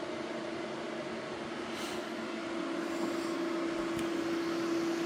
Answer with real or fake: real